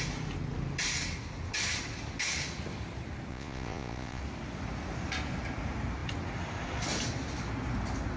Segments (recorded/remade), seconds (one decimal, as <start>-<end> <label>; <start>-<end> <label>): 0.0-3.3 recorded; 3.3-4.2 remade; 4.2-8.2 recorded